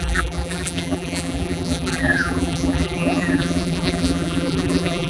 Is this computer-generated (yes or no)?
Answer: yes